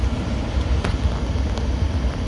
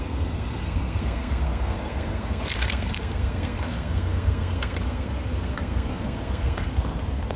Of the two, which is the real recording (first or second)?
first